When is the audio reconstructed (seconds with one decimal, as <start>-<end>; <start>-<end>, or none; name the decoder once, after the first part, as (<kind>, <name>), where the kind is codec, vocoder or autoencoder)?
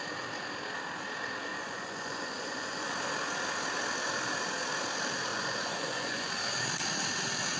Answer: 1.5-2.9 (vocoder, Vocos); 5.3-6.3